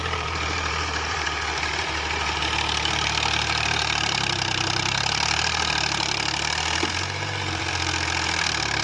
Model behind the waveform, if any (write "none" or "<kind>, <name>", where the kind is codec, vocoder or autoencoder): vocoder, BigVGAN v2